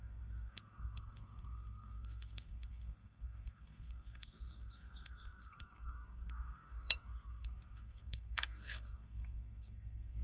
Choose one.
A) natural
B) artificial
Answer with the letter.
B